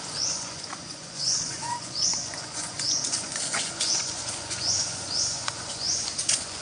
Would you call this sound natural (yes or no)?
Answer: no